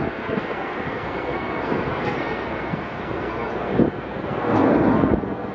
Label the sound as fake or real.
fake